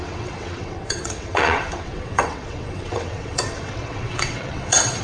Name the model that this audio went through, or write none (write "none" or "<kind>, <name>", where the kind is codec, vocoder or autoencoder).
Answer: vocoder, WaveNeXt